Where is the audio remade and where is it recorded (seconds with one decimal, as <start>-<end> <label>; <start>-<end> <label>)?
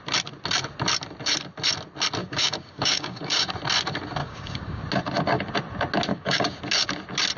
0.0-2.2 recorded; 2.2-3.5 remade; 3.5-4.2 recorded; 4.2-4.8 remade; 4.8-6.1 recorded; 6.1-6.6 remade; 6.6-7.4 recorded